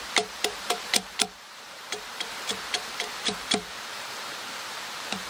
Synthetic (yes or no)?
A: yes